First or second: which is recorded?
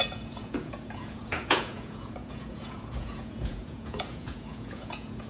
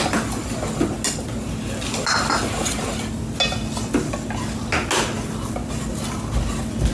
second